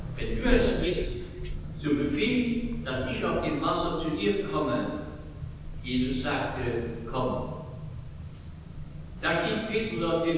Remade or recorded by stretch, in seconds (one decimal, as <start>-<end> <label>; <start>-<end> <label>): 0.0-0.5 recorded; 0.5-1.4 remade; 1.4-10.4 recorded